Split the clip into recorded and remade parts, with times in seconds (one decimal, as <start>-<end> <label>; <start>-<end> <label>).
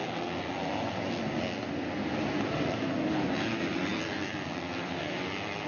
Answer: 0.0-5.7 recorded